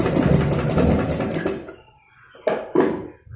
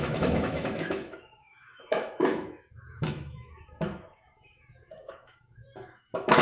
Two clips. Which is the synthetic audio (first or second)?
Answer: second